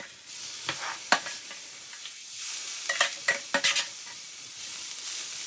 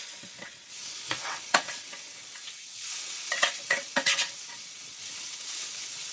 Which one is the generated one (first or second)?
second